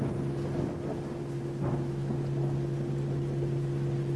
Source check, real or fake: real